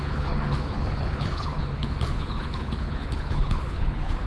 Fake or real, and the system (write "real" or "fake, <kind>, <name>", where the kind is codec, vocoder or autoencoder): fake, codec, HILCodec